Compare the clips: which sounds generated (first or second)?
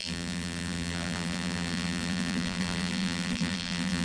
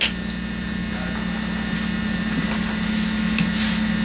first